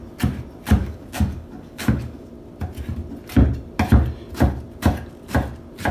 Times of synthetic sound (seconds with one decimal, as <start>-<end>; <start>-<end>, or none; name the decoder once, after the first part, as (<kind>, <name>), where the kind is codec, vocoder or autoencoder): 0.8-2.3 (codec, DAC)